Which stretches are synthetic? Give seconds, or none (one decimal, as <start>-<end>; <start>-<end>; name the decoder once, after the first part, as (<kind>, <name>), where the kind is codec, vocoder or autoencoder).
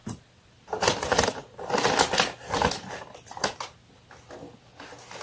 none